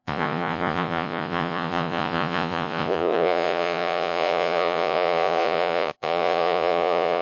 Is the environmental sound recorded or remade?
remade